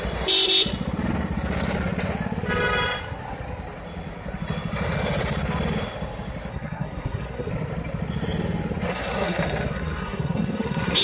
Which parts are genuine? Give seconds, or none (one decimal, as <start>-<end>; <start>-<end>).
0.0-6.5; 7.5-8.9